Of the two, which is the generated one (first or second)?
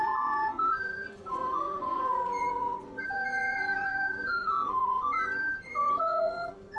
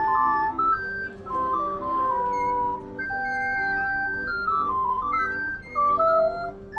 first